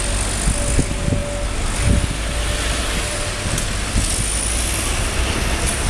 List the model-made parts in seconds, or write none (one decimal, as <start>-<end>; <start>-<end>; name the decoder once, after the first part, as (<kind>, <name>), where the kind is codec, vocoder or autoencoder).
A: none